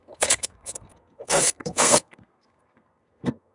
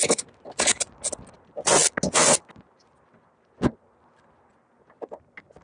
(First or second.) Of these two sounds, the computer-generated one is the first